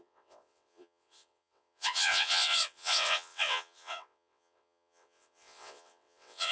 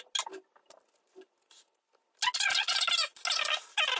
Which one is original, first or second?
second